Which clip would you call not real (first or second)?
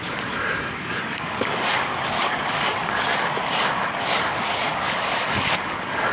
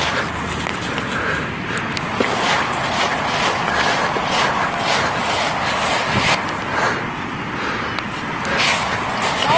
first